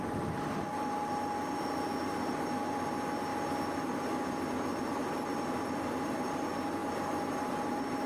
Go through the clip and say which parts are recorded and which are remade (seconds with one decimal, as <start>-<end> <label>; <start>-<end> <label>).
0.0-3.3 remade; 3.3-4.9 recorded; 4.9-8.1 remade